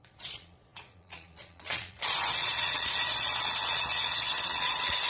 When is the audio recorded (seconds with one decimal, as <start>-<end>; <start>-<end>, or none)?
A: none